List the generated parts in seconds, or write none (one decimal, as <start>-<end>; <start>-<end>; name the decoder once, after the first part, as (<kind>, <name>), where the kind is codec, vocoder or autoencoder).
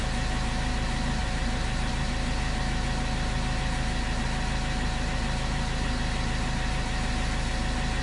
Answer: 1.2-1.9 (vocoder, BigVGAN v2)